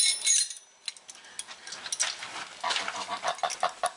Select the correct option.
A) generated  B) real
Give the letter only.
B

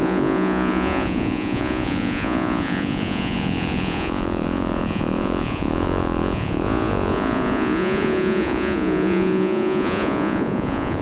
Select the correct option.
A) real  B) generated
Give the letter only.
B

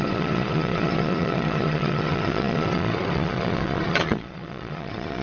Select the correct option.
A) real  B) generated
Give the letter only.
B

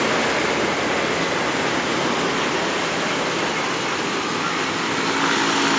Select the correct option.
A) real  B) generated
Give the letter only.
A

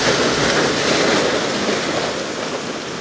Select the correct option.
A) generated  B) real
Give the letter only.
B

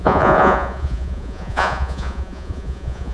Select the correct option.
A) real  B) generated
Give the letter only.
B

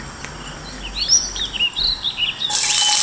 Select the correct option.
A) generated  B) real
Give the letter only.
B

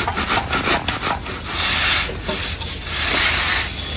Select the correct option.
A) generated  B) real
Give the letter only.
B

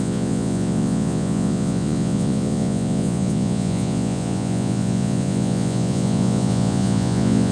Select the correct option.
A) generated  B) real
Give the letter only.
A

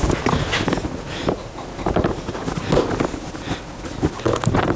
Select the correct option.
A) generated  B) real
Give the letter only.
B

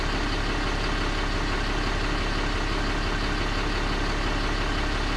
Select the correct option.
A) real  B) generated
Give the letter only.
A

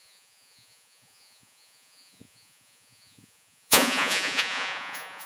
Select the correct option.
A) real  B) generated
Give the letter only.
B